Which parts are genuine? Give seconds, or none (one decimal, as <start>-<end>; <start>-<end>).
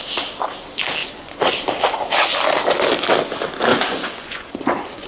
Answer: 0.0-1.0; 1.5-3.7